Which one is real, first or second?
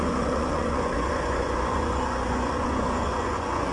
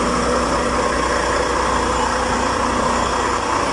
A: second